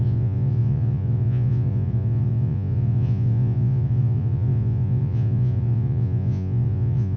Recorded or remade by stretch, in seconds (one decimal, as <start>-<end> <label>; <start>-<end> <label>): 0.0-7.2 remade

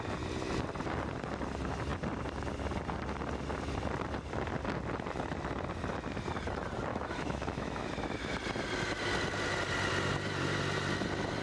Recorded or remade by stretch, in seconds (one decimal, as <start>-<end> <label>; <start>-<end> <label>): 0.0-6.9 recorded; 6.9-7.9 remade; 7.9-11.4 recorded

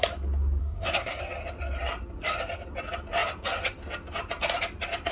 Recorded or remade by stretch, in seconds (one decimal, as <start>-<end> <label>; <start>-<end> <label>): 0.0-0.6 recorded; 0.6-1.2 remade; 1.2-5.1 recorded

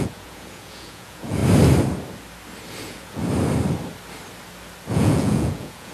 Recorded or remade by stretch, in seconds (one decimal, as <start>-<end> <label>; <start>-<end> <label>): 0.0-1.4 remade; 1.4-2.8 recorded; 2.8-3.2 remade; 3.2-4.9 recorded; 4.9-5.9 remade

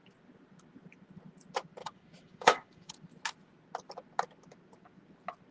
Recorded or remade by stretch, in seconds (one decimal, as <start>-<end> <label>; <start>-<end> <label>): 0.0-1.8 recorded; 1.8-2.9 remade; 2.9-5.5 recorded

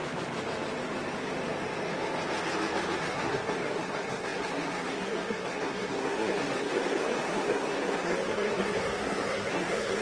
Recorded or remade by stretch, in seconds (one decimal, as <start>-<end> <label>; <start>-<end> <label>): 0.0-3.0 recorded; 3.0-10.0 remade